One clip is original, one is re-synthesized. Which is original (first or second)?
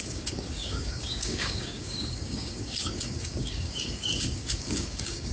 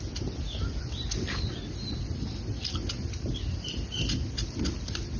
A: second